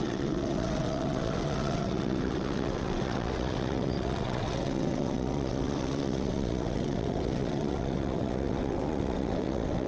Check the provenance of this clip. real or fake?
fake